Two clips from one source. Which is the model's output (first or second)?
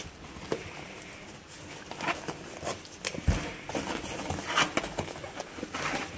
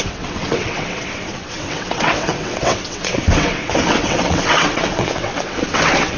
second